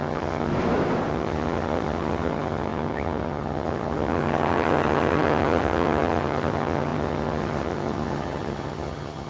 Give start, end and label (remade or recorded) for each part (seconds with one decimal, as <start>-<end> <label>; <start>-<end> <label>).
0.0-0.5 remade; 0.5-1.1 recorded; 1.1-9.3 remade

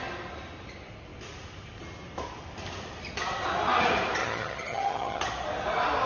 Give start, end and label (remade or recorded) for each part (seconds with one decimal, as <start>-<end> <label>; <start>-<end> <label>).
0.0-4.2 recorded; 4.2-5.2 remade; 5.2-6.1 recorded

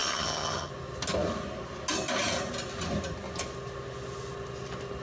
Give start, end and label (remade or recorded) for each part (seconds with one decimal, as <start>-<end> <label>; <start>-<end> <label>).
0.0-0.7 remade; 0.7-5.0 recorded

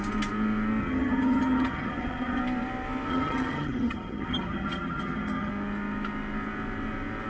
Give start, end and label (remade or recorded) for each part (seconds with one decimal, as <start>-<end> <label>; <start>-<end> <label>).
0.0-0.8 recorded; 0.8-2.4 remade; 2.4-3.1 recorded; 3.1-5.5 remade; 5.5-7.3 recorded